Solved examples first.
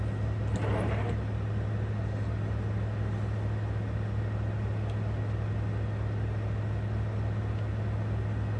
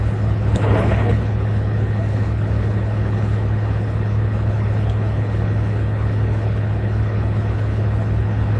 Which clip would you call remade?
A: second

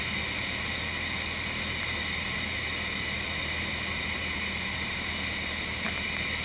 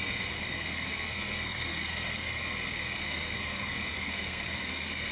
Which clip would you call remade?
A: second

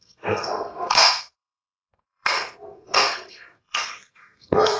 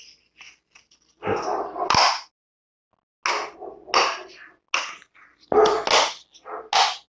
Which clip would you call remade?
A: first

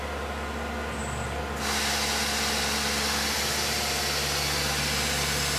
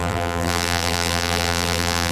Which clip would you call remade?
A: second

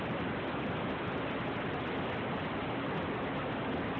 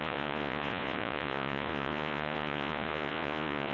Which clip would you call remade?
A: second